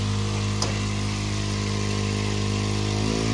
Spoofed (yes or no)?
no